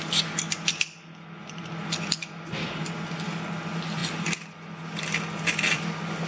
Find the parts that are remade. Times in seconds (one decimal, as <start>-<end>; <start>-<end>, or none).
0.0-1.4; 2.8-4.0; 5.6-6.3